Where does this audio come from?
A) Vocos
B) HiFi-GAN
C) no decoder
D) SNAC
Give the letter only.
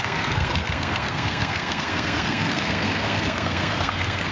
D